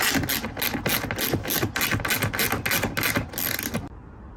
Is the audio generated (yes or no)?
no